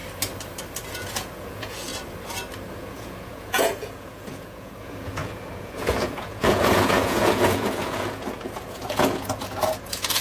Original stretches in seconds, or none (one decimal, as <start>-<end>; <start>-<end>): 0.0-0.9; 1.9-2.7